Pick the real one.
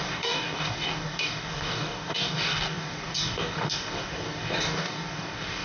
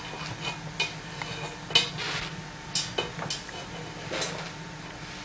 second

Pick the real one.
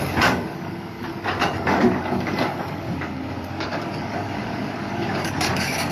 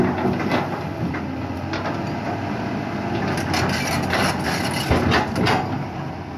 second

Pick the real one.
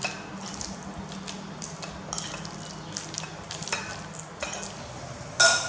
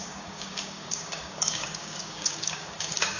first